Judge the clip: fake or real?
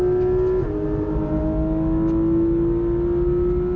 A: real